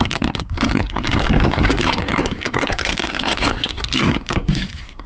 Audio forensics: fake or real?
fake